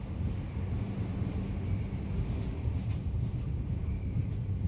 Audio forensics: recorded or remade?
recorded